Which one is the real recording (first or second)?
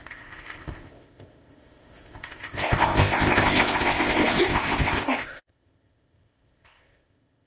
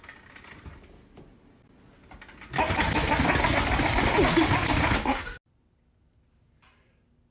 second